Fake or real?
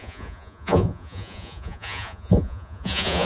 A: fake